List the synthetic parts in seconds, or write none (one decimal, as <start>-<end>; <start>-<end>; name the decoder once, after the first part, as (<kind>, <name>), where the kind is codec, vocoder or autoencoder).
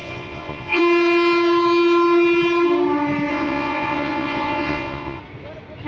0.0-0.8 (vocoder, Vocos); 3.3-5.2